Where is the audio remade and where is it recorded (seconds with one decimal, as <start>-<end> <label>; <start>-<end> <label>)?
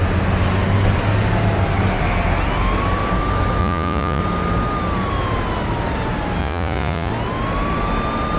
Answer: 0.0-3.6 recorded; 3.6-4.2 remade; 4.2-6.4 recorded; 6.4-7.1 remade; 7.1-8.4 recorded